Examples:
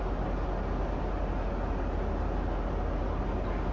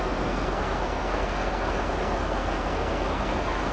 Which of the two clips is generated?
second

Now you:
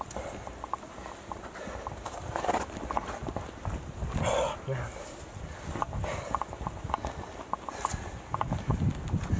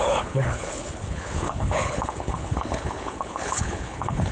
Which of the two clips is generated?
second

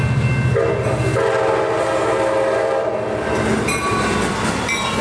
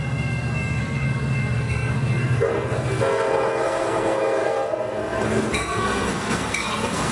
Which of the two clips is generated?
second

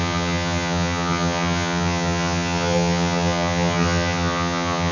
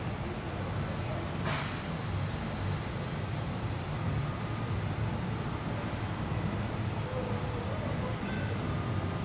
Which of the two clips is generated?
first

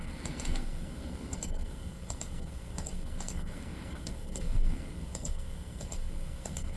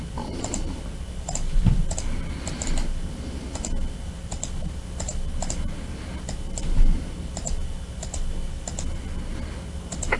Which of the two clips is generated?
first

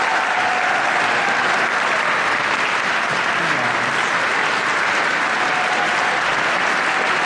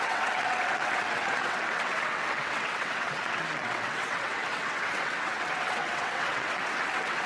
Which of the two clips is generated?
second